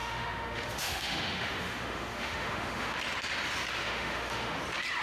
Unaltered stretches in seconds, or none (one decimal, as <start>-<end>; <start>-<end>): 3.0-3.8; 4.6-5.0